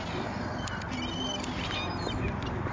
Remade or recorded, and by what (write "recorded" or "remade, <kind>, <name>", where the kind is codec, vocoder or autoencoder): recorded